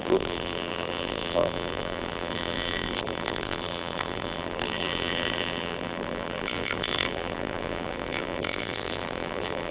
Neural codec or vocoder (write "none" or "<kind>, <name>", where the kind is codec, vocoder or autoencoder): vocoder, BigVGAN v2